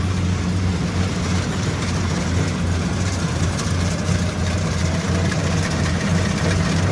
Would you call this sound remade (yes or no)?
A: yes